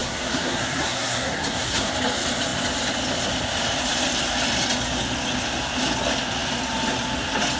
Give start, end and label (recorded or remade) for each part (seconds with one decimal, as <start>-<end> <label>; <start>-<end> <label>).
0.0-1.9 remade; 1.9-7.6 recorded